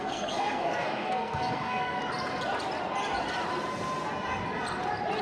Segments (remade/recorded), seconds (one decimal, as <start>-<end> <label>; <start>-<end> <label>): 0.0-2.0 remade; 2.0-5.2 recorded